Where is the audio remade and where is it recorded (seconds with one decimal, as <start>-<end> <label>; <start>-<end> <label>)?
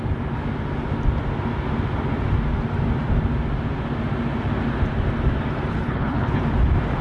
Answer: 0.0-5.7 recorded; 5.7-6.4 remade; 6.4-7.0 recorded